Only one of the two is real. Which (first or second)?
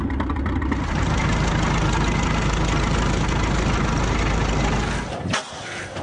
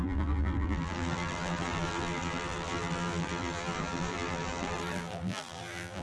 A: first